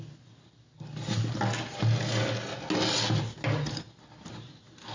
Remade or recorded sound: recorded